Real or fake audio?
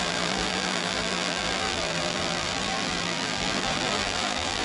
fake